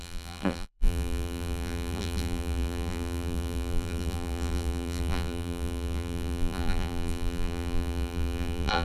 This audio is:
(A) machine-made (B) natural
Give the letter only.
A